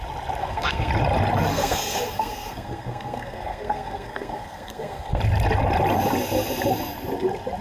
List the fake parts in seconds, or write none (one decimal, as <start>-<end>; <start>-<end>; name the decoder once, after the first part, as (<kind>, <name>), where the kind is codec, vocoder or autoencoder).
0.4-0.9 (codec, SNAC); 1.5-5.2